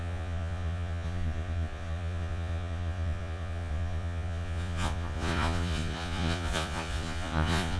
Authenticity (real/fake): fake